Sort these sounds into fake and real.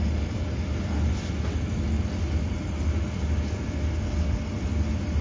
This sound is real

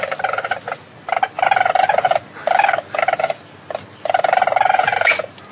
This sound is real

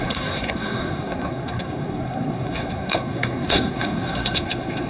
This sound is fake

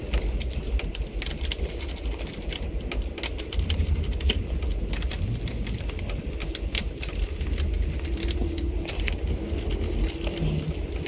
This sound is real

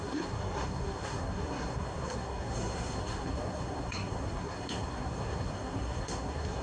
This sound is fake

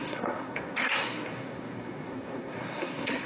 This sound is fake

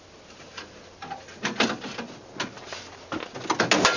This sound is real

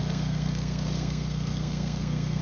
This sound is fake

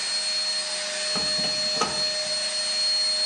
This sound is real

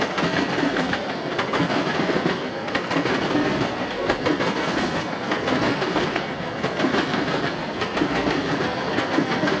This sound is fake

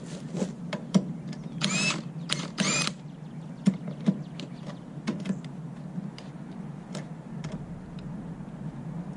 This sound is real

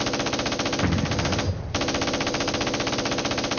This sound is real